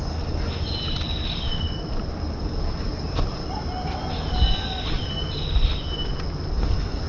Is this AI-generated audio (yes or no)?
no